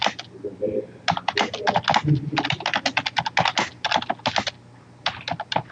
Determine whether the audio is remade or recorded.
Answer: recorded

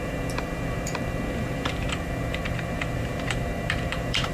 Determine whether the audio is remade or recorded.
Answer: remade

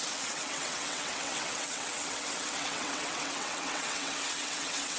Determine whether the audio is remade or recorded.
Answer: remade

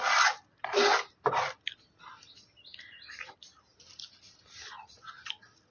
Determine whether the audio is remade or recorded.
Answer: recorded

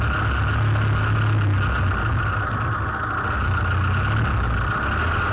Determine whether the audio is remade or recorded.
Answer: recorded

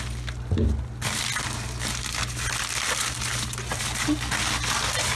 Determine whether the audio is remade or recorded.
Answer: recorded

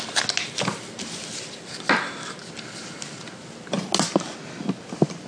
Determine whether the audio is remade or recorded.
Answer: recorded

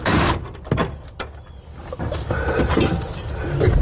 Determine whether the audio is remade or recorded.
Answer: recorded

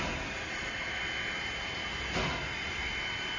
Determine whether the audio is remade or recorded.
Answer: recorded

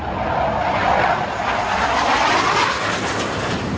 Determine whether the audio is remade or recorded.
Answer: recorded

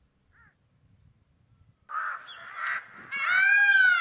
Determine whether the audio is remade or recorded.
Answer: recorded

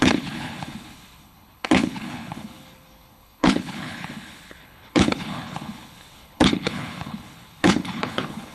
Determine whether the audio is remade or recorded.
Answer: remade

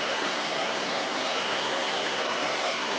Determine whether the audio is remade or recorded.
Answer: remade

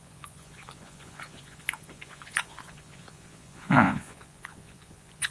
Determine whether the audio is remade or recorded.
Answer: remade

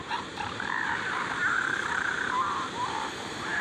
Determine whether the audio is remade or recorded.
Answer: remade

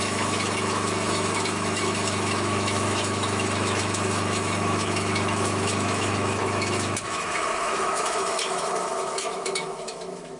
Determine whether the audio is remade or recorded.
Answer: remade